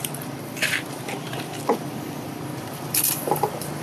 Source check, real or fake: fake